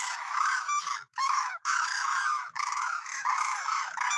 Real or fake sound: fake